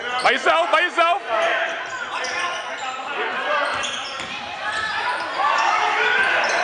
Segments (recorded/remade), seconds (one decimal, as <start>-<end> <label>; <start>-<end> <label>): 0.0-2.5 recorded; 2.5-6.6 remade